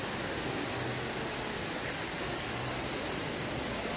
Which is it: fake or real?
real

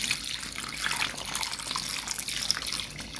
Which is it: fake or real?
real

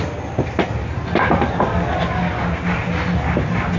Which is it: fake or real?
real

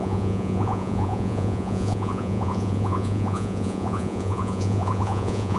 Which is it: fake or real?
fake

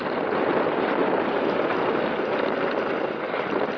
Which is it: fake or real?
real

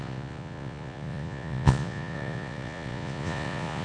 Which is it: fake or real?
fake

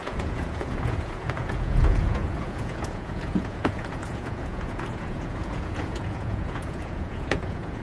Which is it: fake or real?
fake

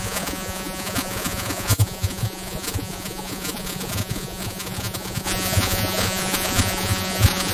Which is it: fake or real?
fake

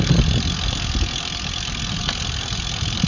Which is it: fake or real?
real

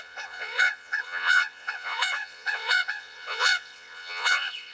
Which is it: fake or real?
fake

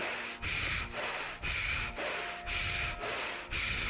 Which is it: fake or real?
real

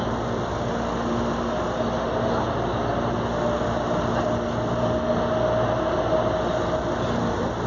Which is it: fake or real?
real